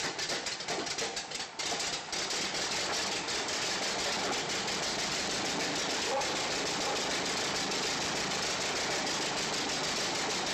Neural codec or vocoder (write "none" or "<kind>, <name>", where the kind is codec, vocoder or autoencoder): none